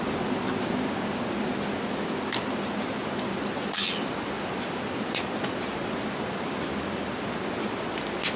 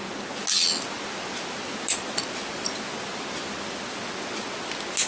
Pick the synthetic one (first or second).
first